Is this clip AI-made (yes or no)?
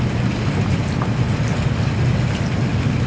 no